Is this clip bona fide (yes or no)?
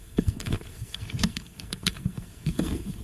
no